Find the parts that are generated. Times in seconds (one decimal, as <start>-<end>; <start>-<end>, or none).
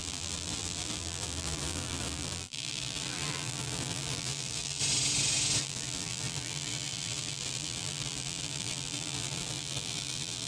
0.0-4.8; 5.6-10.5